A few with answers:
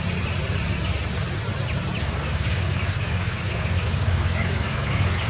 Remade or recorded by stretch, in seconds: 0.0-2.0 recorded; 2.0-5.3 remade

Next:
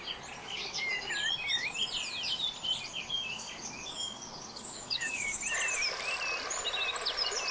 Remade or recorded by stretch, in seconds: 0.0-0.4 recorded; 0.4-1.1 remade; 1.1-2.9 recorded; 2.9-5.4 remade; 5.4-7.5 recorded

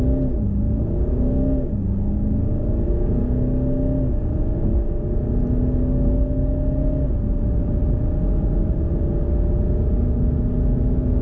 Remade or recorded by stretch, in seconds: 0.0-1.1 recorded; 1.1-2.4 remade; 2.4-11.2 recorded

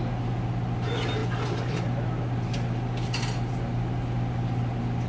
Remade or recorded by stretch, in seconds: 0.0-5.1 recorded

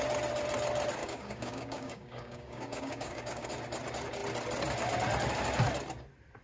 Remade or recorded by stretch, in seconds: 0.0-1.0 recorded; 1.0-3.5 remade; 3.5-6.4 recorded